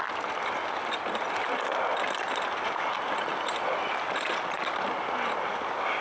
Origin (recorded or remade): recorded